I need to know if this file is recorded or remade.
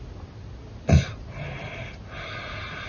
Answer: recorded